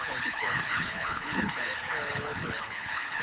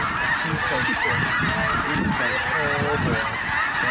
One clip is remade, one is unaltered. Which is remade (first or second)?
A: first